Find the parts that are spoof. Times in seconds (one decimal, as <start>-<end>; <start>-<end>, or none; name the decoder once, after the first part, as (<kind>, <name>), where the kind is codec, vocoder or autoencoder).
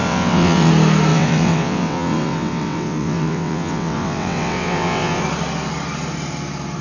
0.0-0.7 (vocoder, WaveNeXt); 1.1-5.2